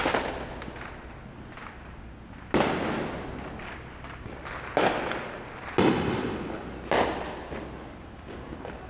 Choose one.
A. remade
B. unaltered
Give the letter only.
B